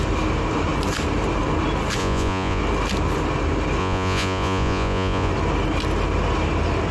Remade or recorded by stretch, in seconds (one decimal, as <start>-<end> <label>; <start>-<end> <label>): 0.0-2.0 recorded; 2.0-2.6 remade; 2.6-3.8 recorded; 3.8-5.3 remade; 5.3-6.9 recorded